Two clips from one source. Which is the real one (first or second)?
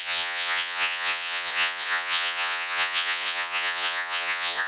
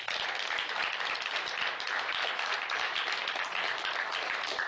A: second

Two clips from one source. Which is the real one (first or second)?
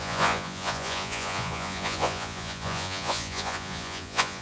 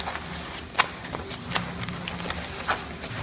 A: second